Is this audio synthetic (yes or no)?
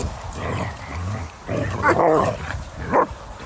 yes